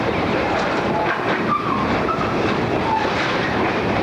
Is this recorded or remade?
remade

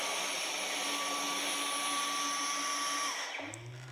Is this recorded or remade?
recorded